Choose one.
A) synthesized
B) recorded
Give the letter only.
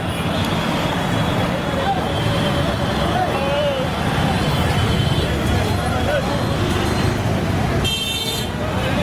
B